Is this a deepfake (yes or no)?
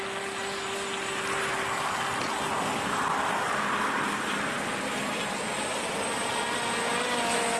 no